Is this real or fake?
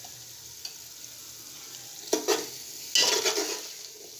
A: real